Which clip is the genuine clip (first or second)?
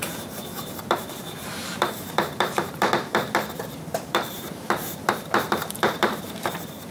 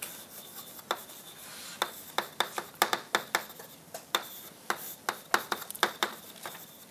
second